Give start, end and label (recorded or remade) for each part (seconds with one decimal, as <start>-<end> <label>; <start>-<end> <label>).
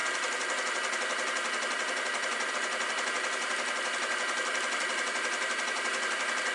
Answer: 0.0-6.5 recorded